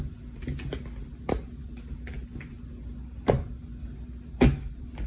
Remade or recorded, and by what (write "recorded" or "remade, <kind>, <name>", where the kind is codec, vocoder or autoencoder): recorded